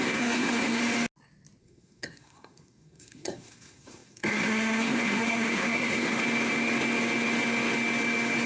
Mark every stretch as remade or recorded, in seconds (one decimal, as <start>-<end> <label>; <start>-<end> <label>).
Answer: 0.0-0.8 remade; 0.8-1.6 recorded; 1.6-6.2 remade; 6.2-8.5 recorded